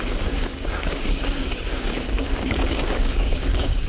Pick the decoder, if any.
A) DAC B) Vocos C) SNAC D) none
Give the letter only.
A